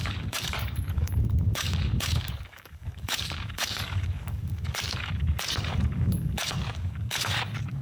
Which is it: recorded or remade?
remade